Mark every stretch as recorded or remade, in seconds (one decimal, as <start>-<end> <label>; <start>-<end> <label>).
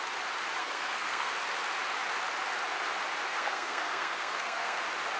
0.0-0.6 recorded; 0.6-1.3 remade; 1.3-3.3 recorded; 3.3-4.8 remade; 4.8-5.2 recorded